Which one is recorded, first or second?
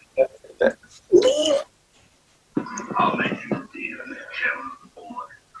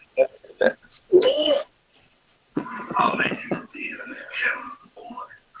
first